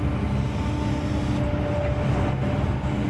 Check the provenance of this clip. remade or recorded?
recorded